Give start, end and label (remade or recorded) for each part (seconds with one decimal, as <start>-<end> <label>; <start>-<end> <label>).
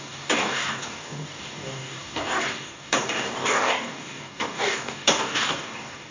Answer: 0.0-6.1 remade